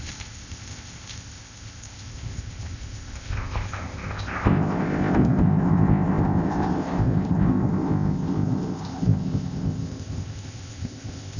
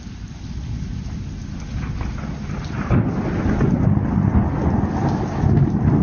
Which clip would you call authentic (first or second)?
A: second